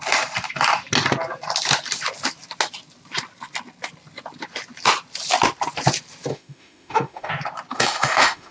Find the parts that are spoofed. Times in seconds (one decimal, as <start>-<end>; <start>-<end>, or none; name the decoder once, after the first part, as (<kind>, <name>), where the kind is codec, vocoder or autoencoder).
6.3-7.3 (autoencoder, DAC-VAE); 7.7-8.5